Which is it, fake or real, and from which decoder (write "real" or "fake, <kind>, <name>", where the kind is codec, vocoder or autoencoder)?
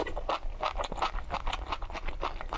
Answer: real